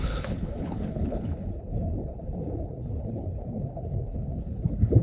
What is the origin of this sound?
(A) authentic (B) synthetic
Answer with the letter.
B